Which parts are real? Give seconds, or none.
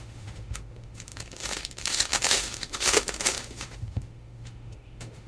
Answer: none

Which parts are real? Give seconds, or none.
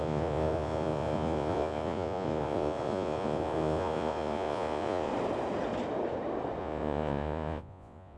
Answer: 5.1-6.6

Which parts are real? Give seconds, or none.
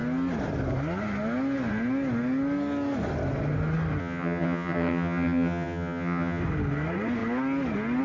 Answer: 0.0-4.0; 6.4-8.0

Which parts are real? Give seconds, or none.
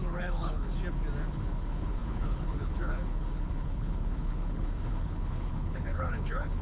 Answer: 0.7-1.2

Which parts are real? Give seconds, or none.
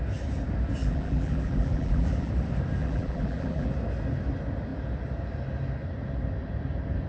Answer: 0.0-0.8; 2.3-2.8; 3.7-7.1